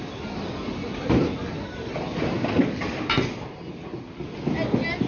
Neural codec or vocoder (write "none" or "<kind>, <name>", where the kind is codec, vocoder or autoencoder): none